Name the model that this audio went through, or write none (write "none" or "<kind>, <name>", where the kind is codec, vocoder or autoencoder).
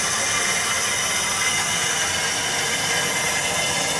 none